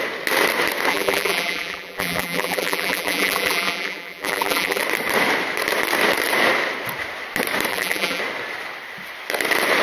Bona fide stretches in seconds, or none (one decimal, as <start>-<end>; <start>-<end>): 0.0-0.9; 4.8-7.7; 8.2-9.8